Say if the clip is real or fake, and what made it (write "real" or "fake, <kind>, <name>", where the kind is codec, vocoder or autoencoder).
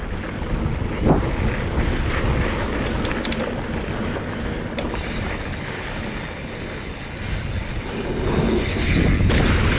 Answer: real